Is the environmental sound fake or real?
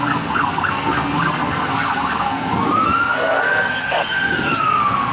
fake